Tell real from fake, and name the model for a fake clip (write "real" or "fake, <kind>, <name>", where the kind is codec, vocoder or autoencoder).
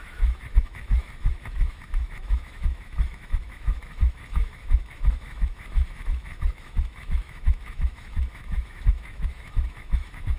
fake, autoencoder, DAC-VAE